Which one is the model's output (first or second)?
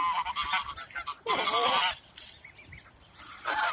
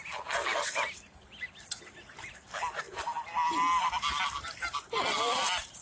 first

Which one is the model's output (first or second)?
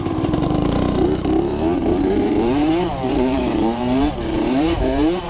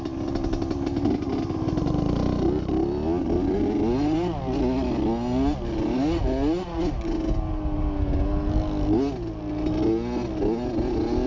first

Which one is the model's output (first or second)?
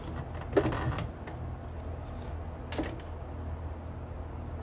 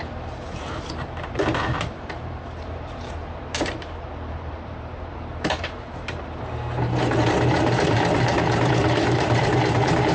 second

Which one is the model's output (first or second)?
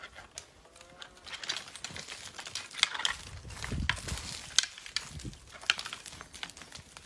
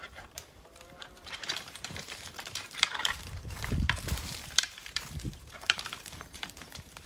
second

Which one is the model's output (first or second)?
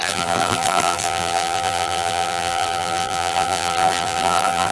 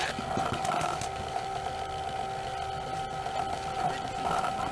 first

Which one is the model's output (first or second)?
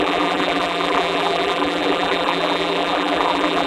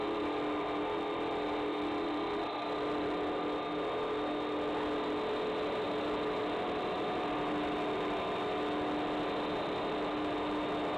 first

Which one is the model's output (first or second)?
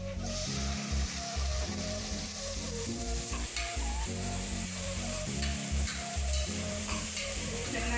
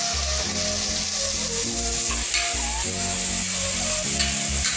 first